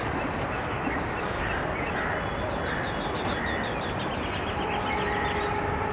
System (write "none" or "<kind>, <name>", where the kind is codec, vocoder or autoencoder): none